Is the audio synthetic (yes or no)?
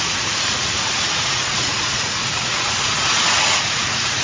yes